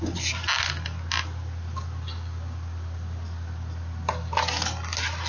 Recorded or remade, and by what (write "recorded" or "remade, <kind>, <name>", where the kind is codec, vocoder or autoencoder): recorded